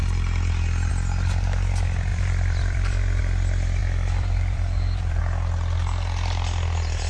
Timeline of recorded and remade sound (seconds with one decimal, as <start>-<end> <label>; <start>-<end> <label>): 0.0-2.1 recorded; 2.1-3.2 remade; 3.2-3.8 recorded; 3.8-5.2 remade; 5.2-7.1 recorded